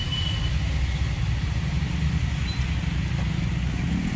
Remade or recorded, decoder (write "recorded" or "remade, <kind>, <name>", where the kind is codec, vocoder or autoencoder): recorded